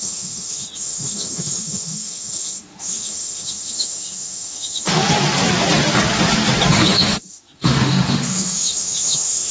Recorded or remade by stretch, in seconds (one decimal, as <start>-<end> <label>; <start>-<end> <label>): 0.0-5.0 remade; 5.0-6.7 recorded; 6.7-9.5 remade